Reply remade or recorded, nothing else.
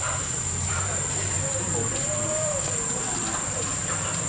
remade